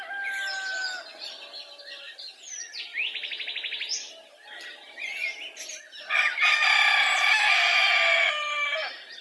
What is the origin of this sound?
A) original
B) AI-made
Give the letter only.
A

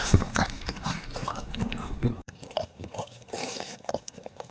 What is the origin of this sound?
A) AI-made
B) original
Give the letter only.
A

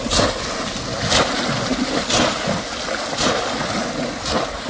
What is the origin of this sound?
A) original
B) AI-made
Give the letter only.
A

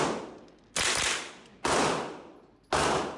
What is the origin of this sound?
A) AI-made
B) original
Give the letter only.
B